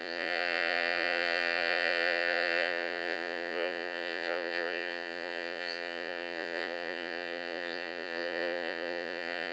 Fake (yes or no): yes